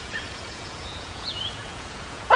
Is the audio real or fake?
fake